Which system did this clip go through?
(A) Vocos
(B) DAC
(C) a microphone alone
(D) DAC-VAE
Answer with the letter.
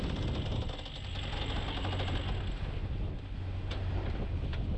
C